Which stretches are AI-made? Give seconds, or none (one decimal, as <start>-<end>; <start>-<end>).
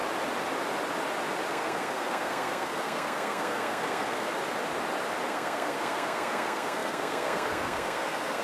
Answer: 1.5-4.3; 5.3-8.4